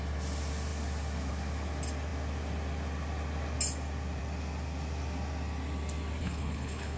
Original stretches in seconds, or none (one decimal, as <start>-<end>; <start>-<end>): 0.0-6.2